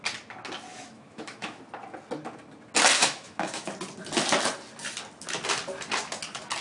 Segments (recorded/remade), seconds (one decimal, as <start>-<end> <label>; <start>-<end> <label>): 0.0-0.7 recorded; 0.7-1.6 remade; 1.6-3.0 recorded; 3.0-3.7 remade; 3.7-6.6 recorded